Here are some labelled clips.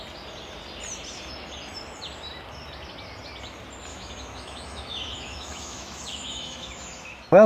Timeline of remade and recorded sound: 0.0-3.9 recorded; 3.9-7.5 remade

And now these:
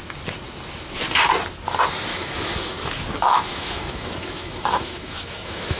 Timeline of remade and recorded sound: 0.0-2.1 recorded; 2.1-5.8 remade

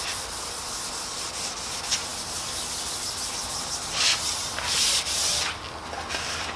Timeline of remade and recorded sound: 0.0-6.6 recorded

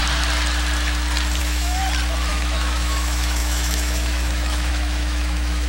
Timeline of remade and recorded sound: 0.0-1.4 recorded; 1.4-1.8 remade; 1.8-2.3 recorded; 2.3-5.7 remade